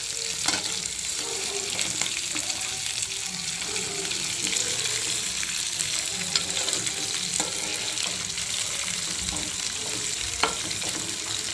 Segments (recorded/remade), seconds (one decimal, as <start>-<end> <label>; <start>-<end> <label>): 0.0-11.5 recorded